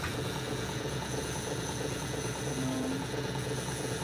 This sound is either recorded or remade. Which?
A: remade